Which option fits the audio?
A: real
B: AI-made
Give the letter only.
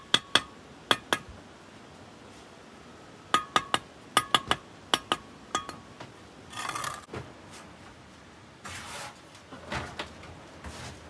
A